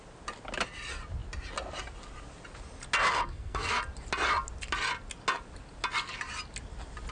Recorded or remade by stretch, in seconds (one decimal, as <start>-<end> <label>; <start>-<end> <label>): 0.0-3.1 recorded; 3.1-3.8 remade; 3.8-7.1 recorded